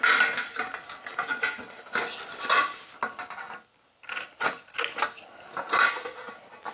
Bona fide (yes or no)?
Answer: yes